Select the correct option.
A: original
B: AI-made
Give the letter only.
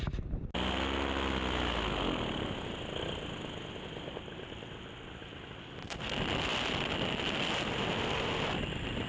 A